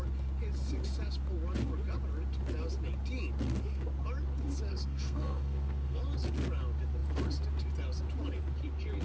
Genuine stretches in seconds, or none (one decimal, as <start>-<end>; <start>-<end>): 0.0-4.7; 6.0-9.0